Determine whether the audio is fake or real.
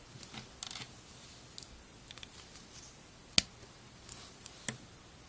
real